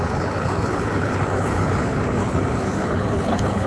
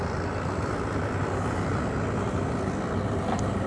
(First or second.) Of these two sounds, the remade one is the first